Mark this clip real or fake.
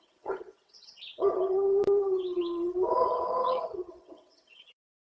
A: fake